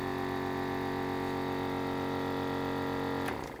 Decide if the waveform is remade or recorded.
recorded